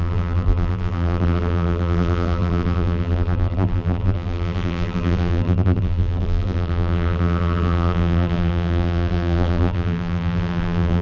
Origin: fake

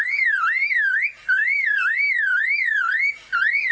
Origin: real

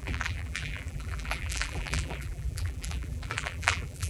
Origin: fake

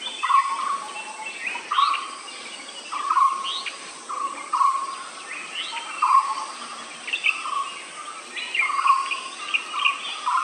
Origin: real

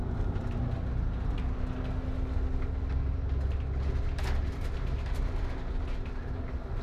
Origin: real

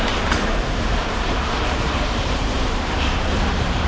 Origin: fake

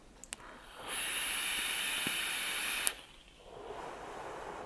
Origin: real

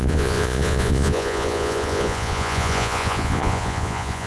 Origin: fake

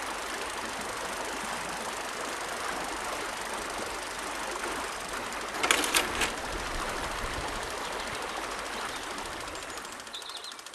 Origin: real